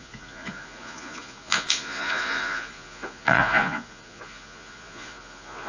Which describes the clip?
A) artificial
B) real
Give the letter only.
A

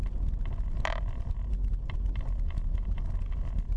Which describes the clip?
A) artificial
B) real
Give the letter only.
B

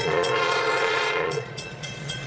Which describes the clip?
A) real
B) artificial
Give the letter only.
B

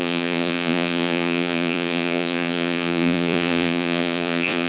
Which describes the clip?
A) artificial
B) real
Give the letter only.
A